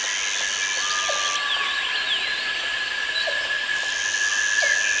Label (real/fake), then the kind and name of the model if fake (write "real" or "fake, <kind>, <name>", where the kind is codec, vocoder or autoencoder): real